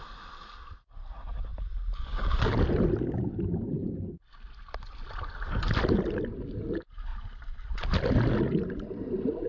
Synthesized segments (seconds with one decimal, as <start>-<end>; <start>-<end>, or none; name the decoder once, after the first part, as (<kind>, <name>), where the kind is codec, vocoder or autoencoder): 7.1-8.0 (vocoder, BigVGAN v2)

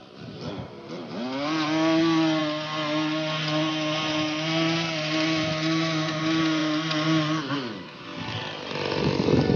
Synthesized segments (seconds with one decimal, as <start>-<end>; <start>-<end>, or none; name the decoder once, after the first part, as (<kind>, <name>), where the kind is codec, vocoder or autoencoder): none

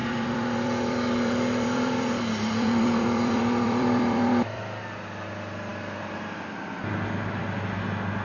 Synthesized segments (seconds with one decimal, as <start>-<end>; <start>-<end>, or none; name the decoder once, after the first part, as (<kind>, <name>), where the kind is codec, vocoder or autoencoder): 0.0-4.6 (vocoder, BigVGAN v2)

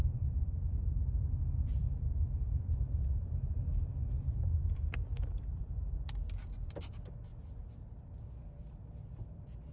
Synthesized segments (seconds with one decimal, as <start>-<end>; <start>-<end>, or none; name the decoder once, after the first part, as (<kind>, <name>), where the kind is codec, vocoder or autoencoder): 0.6-1.0 (vocoder, BigVGAN v2); 1.6-2.2; 4.1-7.3; 8.6-9.7

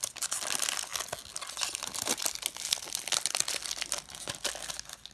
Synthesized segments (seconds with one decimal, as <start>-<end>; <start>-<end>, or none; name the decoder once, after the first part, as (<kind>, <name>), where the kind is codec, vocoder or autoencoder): none

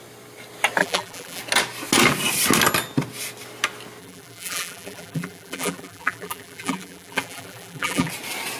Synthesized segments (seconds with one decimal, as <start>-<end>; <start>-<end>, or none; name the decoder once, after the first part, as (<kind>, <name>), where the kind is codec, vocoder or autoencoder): 0.8-1.4 (vocoder, BigVGAN v2); 4.0-8.1

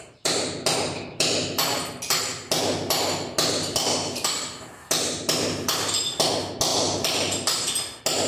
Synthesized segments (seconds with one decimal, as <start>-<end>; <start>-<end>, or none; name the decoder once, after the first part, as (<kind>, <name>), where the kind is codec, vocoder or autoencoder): none

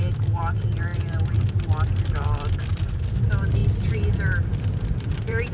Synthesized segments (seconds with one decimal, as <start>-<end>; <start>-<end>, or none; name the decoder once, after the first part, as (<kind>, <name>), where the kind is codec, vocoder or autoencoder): 0.0-3.6 (vocoder, BigVGAN v2); 4.9-5.5